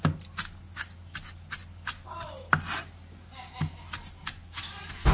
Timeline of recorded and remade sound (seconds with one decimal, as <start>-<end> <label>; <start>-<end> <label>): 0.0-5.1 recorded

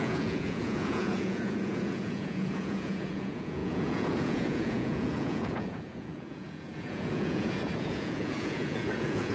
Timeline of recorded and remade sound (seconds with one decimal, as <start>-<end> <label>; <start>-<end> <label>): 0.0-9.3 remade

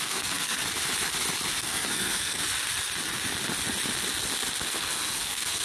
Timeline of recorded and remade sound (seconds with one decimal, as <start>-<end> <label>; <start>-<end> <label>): 0.0-0.6 remade; 0.6-1.6 recorded; 1.6-2.4 remade; 2.4-4.7 recorded; 4.7-5.6 remade

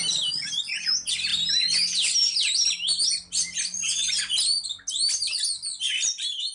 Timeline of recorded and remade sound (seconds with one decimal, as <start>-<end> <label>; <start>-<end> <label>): 0.0-1.3 remade; 1.3-4.9 recorded; 4.9-6.5 remade